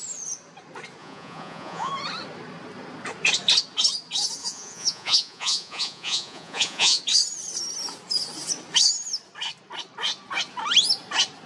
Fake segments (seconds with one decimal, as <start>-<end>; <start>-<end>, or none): 1.0-1.9; 4.4-7.0

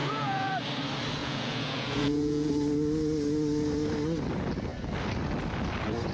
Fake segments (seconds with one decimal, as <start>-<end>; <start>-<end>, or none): 0.0-0.5; 1.2-2.5

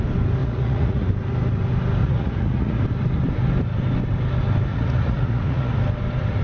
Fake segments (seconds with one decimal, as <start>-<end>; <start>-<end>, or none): 0.4-1.1; 2.0-2.8; 4.7-5.7

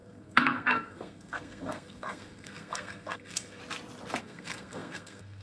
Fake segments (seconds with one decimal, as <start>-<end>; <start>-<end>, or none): 0.0-3.6; 4.2-5.4

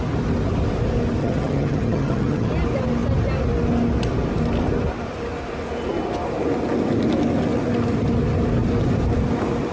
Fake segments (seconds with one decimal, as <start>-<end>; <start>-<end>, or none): 1.2-2.5

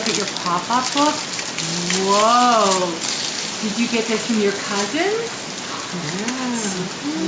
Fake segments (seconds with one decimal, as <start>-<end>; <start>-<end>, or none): none